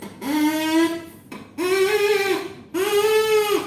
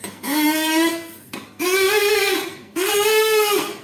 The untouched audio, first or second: first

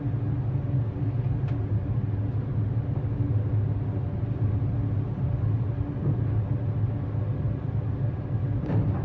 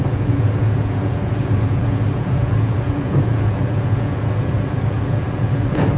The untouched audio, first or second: first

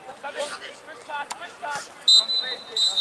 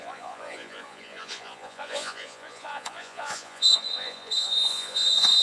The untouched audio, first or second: first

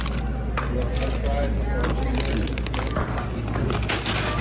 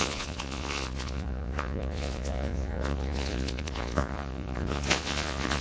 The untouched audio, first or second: first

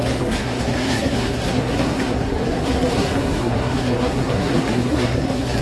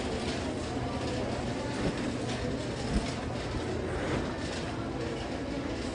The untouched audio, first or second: second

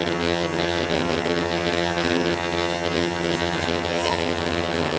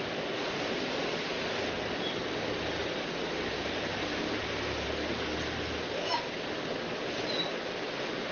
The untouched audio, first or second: second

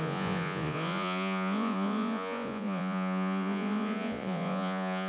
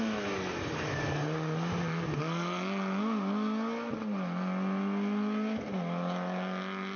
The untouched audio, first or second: second